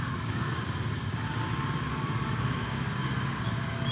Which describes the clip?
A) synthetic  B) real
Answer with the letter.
A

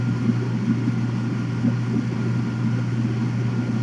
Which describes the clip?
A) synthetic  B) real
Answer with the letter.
B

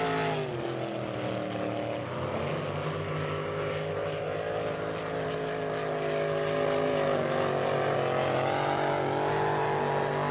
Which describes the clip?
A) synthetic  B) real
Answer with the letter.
B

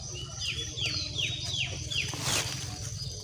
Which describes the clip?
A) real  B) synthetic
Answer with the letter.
A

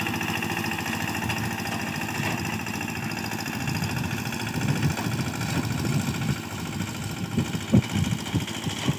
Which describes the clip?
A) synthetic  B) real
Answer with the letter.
B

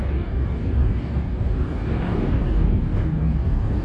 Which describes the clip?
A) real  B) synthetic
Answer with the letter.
B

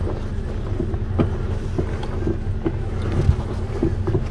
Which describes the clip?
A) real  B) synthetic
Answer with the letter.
A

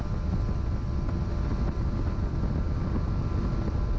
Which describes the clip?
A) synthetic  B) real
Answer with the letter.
B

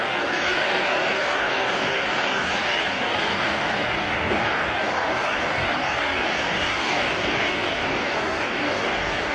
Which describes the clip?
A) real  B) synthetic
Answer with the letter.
B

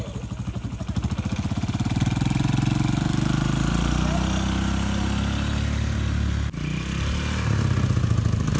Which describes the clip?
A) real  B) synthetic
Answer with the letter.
A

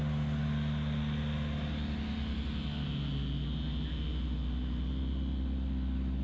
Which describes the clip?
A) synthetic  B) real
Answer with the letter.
B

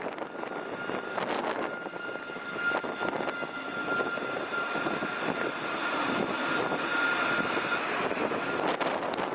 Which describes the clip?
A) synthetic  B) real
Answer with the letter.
B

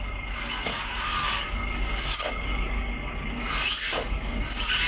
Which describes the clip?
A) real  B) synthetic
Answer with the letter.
B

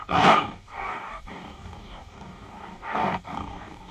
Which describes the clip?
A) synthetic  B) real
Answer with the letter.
A